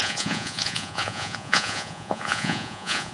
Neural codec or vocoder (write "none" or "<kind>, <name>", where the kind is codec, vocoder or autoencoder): vocoder, Vocos